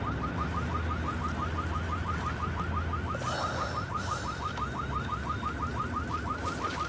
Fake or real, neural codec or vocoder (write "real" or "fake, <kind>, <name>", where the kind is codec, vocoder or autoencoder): real